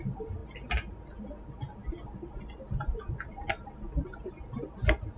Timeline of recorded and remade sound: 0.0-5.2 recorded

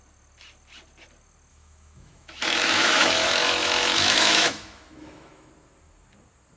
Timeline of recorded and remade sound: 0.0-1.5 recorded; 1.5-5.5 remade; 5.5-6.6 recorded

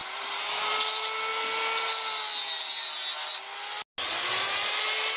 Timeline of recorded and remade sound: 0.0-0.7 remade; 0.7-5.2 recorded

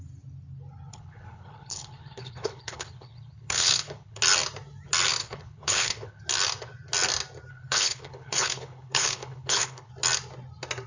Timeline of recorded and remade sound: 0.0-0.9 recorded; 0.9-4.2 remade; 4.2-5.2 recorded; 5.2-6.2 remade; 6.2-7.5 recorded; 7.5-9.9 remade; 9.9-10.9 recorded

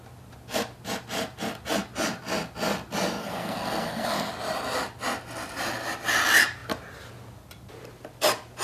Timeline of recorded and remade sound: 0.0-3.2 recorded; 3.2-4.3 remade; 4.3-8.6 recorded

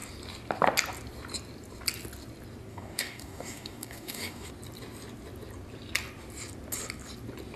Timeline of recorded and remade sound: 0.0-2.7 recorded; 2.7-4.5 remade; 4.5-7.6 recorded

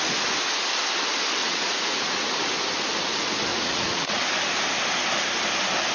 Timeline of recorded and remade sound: 0.0-1.4 recorded; 1.4-2.3 remade; 2.3-3.5 recorded; 3.5-4.2 remade; 4.2-5.9 recorded

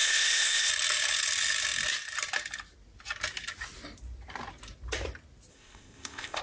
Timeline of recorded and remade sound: 0.0-0.7 remade; 0.7-5.5 recorded; 5.5-6.4 remade